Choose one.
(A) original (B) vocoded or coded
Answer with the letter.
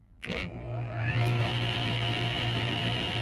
B